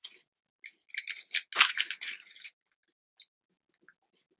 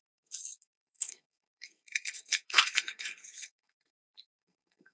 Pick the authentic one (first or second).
first